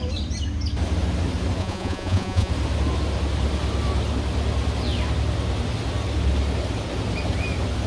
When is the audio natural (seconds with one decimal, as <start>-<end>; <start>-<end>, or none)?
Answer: 0.0-1.6; 2.5-7.9